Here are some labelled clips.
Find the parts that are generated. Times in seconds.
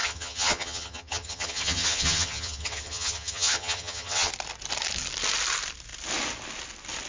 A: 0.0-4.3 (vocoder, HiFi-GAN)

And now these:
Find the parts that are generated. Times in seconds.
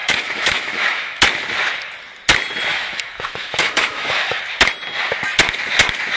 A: 0.0-1.2 (autoencoder, DAC-VAE); 2.7-4.4